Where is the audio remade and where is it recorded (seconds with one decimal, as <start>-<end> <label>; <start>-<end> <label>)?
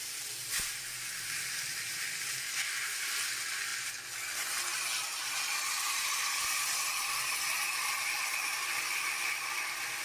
0.0-10.0 recorded